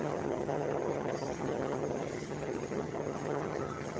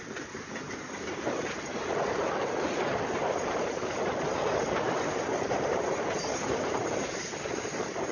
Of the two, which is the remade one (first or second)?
first